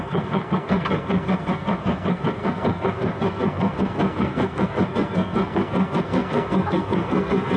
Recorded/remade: remade